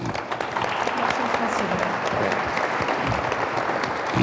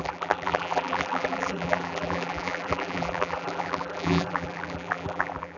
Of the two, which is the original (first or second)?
first